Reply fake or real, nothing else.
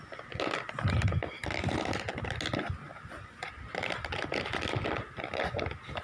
real